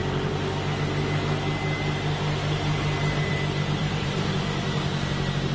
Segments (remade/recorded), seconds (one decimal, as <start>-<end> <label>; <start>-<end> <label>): 0.0-3.8 recorded; 3.8-4.6 remade; 4.6-5.5 recorded